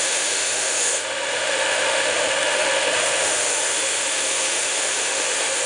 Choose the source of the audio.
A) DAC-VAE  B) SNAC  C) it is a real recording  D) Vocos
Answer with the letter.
A